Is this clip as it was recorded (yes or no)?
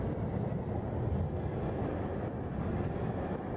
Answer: yes